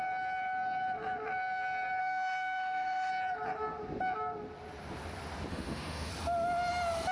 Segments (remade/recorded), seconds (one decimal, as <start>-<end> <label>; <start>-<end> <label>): 0.0-2.0 recorded; 2.0-3.1 remade; 3.1-5.5 recorded; 5.5-6.1 remade; 6.1-7.1 recorded